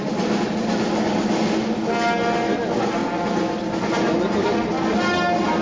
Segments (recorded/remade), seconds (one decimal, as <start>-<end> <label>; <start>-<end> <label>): 0.0-5.6 recorded